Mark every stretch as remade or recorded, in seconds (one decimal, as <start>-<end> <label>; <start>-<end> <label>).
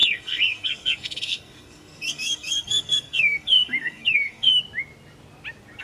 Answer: 0.0-4.5 remade; 4.5-5.8 recorded